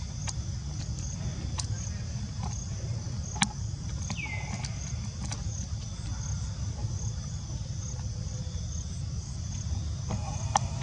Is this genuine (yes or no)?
yes